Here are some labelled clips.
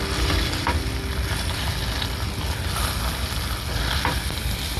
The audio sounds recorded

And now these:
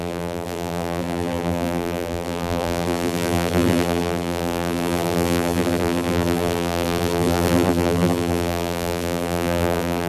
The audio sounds remade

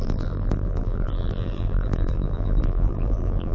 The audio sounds remade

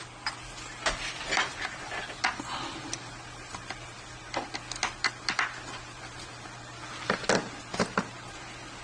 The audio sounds recorded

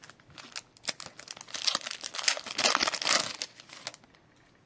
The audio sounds recorded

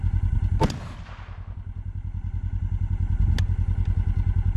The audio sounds recorded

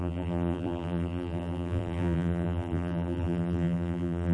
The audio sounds remade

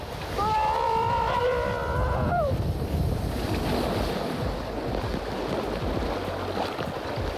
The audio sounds remade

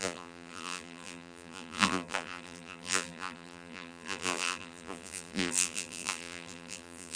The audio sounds remade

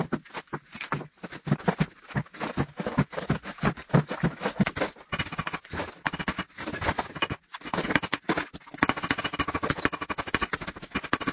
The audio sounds recorded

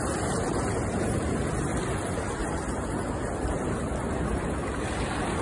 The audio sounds remade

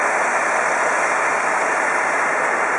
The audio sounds recorded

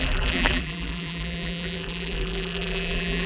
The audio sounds remade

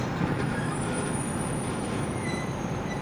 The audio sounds remade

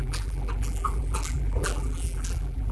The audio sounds remade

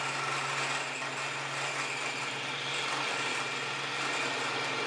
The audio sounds recorded